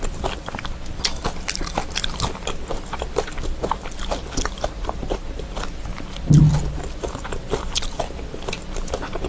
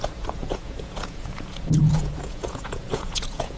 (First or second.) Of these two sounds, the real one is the first